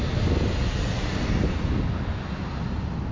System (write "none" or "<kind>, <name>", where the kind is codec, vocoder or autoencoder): none